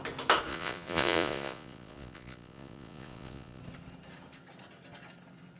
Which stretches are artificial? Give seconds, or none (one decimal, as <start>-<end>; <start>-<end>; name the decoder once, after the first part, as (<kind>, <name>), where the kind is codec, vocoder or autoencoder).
0.5-3.6 (vocoder, Vocos)